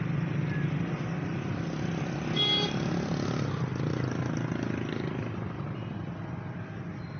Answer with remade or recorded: recorded